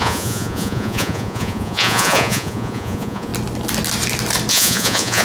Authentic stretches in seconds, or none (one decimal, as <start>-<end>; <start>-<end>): 3.3-4.5